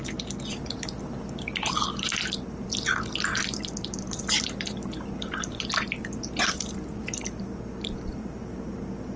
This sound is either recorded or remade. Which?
recorded